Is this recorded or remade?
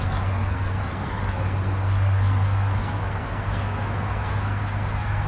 remade